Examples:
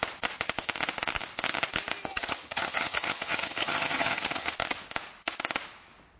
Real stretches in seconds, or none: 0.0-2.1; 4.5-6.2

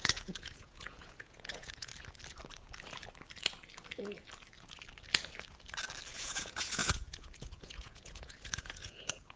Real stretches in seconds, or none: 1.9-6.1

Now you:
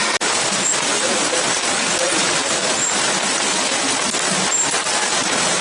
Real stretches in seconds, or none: 0.0-5.6